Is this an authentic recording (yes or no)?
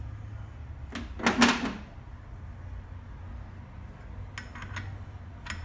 yes